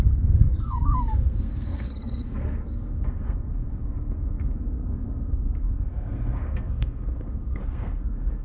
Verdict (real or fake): fake